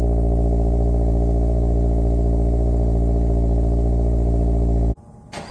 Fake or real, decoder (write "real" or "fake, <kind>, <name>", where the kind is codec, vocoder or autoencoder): real